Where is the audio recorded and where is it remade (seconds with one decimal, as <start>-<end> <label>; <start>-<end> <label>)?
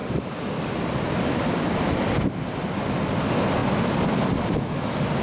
0.0-5.2 recorded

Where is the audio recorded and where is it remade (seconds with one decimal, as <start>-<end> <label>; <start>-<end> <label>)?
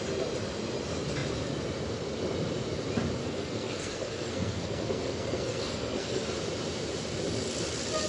0.0-3.2 recorded; 3.2-6.2 remade; 6.2-8.1 recorded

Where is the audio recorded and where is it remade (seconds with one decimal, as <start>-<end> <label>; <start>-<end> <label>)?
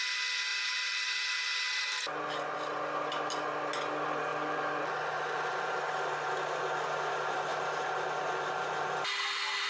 0.0-9.7 recorded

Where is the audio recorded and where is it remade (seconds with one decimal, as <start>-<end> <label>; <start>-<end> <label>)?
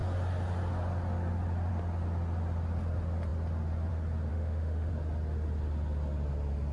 0.0-4.3 recorded; 4.3-4.9 remade; 4.9-6.7 recorded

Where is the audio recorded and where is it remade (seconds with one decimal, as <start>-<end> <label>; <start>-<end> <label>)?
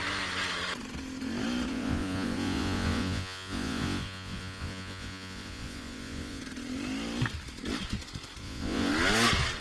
0.0-1.7 recorded; 1.7-6.4 remade; 6.4-8.4 recorded; 8.4-8.9 remade; 8.9-9.6 recorded